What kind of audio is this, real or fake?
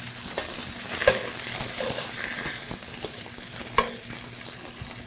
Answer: real